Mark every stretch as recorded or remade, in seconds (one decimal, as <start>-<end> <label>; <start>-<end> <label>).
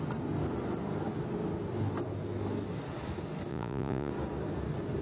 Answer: 0.0-3.5 recorded; 3.5-4.1 remade; 4.1-5.0 recorded